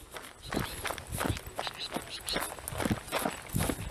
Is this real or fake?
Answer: real